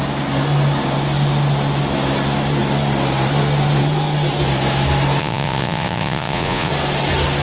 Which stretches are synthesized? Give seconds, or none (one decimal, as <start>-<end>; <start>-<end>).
5.2-6.7